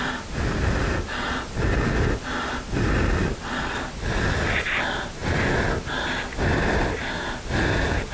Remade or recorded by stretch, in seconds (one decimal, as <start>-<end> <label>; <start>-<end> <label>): 0.0-8.1 recorded